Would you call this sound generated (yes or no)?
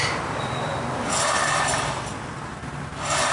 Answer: no